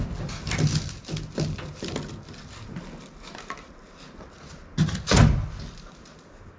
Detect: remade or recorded recorded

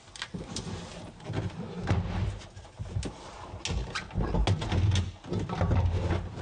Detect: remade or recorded recorded